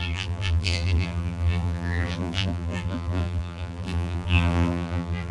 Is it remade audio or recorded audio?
remade